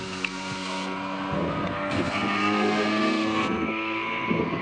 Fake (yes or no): yes